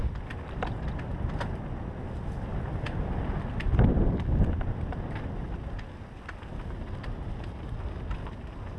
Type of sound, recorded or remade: recorded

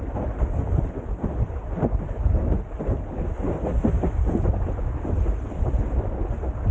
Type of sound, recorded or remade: recorded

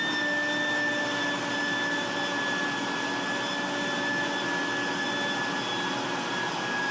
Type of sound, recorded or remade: recorded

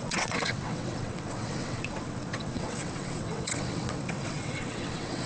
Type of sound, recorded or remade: remade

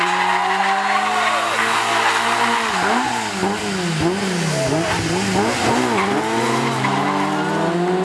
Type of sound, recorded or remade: recorded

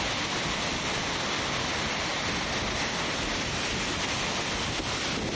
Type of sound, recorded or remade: recorded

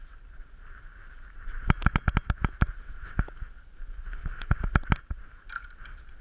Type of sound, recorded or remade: recorded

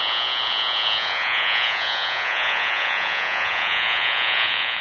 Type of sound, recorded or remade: remade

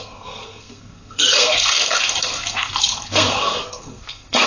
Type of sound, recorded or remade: remade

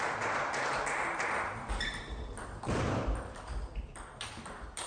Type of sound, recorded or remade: recorded